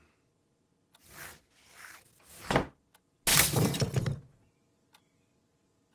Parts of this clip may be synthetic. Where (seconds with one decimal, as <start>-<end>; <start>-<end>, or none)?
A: 3.3-4.2